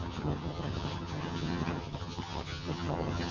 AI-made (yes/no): yes